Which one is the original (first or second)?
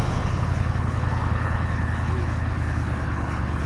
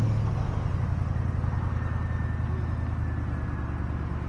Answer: second